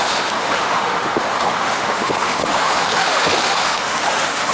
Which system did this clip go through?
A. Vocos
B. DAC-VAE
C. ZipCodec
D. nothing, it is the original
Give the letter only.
B